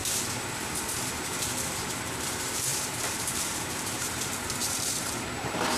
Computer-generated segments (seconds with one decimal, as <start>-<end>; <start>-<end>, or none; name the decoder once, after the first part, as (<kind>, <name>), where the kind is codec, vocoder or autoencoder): 1.8-5.8 (vocoder, BigVGAN v2)